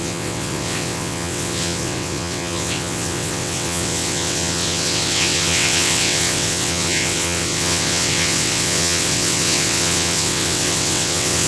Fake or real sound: fake